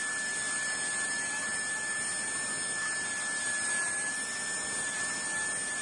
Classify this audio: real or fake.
real